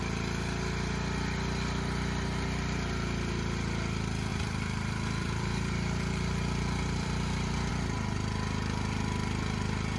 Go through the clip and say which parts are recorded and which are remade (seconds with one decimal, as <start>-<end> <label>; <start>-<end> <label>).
0.0-4.3 recorded; 4.3-7.7 remade; 7.7-10.0 recorded